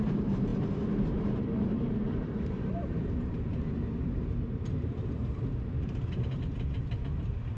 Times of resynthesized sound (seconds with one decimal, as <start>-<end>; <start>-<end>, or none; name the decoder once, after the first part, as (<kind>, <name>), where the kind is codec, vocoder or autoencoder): 0.0-7.6 (vocoder, BigVGAN v2)